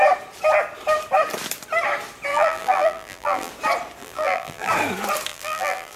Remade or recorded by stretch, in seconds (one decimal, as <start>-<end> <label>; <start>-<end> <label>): 0.0-2.3 recorded; 2.3-3.5 remade; 3.5-4.0 recorded; 4.0-4.7 remade; 4.7-5.3 recorded; 5.3-6.0 remade